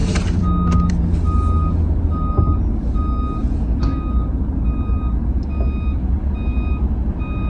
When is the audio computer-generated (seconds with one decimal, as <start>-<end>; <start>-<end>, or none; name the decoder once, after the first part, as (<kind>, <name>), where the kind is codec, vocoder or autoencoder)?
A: none